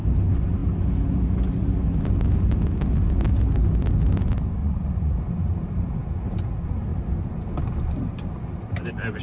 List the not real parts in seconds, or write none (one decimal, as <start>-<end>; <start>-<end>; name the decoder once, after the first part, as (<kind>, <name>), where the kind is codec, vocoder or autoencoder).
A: 4.6-5.1 (vocoder, Vocos)

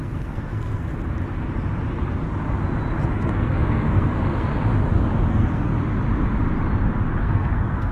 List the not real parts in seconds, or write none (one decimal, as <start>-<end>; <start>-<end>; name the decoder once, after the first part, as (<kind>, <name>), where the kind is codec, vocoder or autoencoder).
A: 0.0-0.9 (codec, SNAC); 3.1-4.5; 5.3-5.7; 7.2-7.9

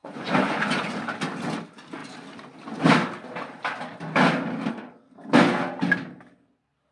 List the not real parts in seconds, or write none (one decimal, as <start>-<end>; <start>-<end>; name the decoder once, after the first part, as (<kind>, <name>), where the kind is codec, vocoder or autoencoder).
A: 0.0-1.0 (vocoder, Vocos)